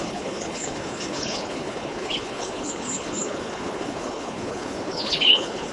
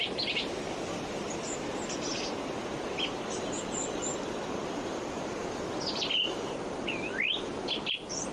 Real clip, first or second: second